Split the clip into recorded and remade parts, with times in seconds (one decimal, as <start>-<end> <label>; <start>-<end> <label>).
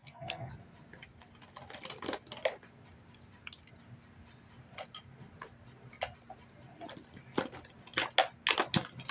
0.0-0.5 remade; 0.5-9.1 recorded